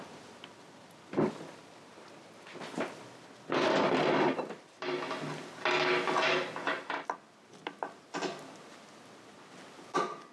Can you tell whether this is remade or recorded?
recorded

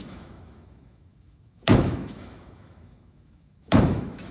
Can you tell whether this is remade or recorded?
remade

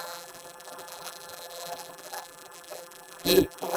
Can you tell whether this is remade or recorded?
remade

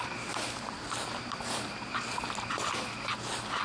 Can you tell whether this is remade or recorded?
recorded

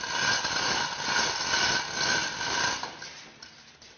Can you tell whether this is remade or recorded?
recorded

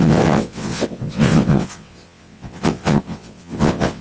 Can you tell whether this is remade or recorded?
remade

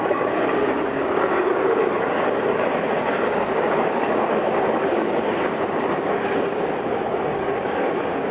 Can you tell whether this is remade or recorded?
remade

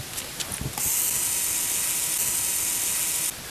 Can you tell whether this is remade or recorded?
recorded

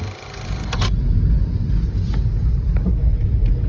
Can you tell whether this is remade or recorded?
recorded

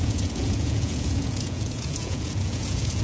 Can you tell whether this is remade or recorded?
remade